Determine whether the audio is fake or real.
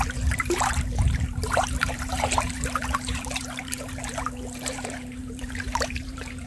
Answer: fake